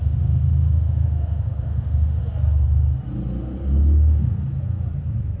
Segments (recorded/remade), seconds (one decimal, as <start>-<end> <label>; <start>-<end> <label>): 0.0-2.2 remade; 2.2-5.4 recorded